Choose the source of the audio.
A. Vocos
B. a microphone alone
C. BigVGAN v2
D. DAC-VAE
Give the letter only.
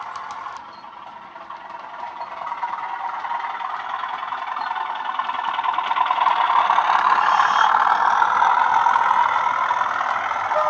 B